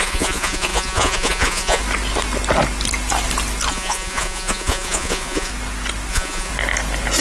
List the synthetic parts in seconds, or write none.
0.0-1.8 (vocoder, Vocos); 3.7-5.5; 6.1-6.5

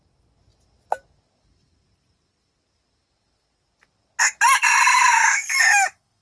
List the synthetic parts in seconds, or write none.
5.1-6.2 (autoencoder, DAC-VAE)